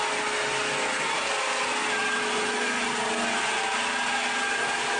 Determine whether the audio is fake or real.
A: real